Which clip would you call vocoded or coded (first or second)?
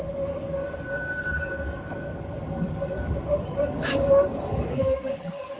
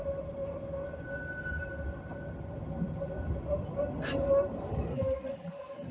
first